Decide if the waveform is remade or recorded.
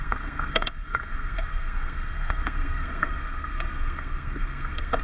remade